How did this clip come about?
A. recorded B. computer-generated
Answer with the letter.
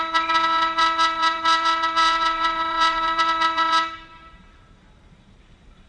B